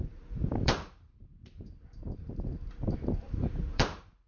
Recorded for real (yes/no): no